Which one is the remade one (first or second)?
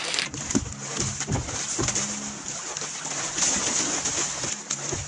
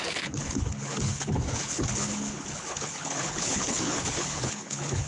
second